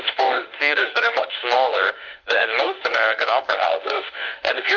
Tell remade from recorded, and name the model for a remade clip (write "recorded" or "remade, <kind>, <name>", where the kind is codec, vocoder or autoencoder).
remade, autoencoder, DAC-VAE